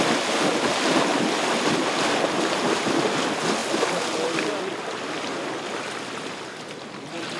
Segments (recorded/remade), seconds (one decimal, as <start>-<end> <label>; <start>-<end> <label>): 0.0-7.4 recorded